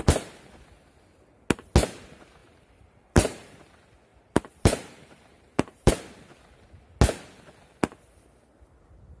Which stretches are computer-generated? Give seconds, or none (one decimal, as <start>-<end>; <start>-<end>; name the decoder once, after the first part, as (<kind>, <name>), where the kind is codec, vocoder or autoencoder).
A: 2.4-3.6 (vocoder, BigVGAN v2); 4.1-5.9

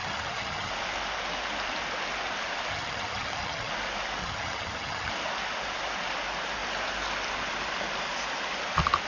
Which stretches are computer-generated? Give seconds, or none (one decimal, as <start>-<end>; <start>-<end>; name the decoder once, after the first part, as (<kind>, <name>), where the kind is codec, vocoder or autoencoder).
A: 0.0-0.7 (vocoder, HiFi-GAN); 2.7-3.7; 4.2-5.1

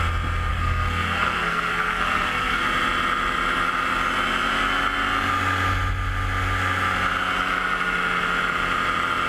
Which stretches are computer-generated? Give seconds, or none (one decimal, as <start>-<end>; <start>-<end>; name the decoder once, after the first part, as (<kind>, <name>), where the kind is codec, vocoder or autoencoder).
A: 0.5-2.6 (codec, SNAC)

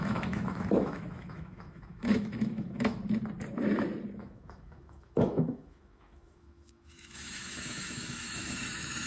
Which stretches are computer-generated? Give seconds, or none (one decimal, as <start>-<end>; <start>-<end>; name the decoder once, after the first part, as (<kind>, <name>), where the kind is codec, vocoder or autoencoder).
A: 0.0-3.0 (autoencoder, DAC-VAE); 4.2-9.1

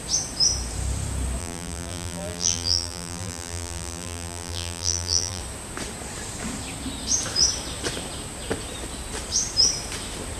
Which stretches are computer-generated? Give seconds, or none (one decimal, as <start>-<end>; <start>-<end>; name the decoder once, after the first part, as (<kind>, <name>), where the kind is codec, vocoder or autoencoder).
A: 1.4-5.4 (vocoder, BigVGAN v2)

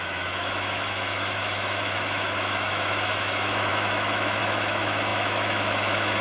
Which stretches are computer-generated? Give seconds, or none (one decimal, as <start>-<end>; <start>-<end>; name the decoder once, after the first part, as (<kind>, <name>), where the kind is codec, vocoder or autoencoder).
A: 0.0-6.2 (autoencoder, DAC-VAE)